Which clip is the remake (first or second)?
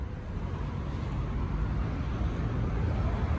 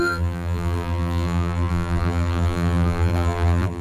second